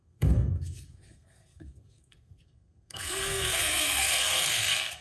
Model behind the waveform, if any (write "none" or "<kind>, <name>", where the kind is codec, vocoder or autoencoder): codec, SNAC